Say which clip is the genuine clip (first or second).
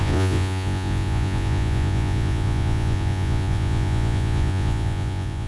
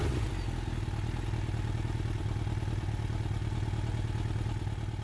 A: second